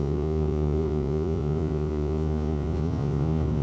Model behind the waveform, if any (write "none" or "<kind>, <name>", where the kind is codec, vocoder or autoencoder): vocoder, Vocos